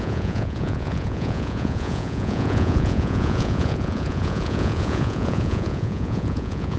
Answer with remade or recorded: remade